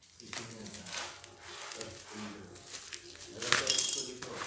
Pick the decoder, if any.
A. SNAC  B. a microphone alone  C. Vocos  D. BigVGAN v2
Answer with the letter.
B